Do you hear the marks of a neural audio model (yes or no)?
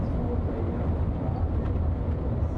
no